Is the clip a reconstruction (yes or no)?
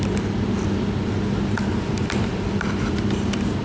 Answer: no